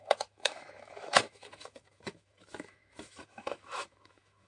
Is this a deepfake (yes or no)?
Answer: yes